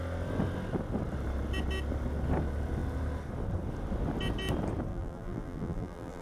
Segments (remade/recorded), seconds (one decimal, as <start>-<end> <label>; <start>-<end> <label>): 0.0-4.9 recorded; 4.9-6.2 remade